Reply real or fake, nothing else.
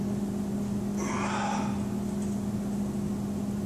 real